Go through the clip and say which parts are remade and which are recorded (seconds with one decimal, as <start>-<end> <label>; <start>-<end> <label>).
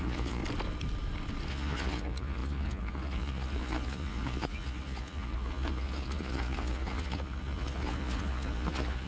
0.0-0.4 remade; 0.4-1.5 recorded; 1.5-9.1 remade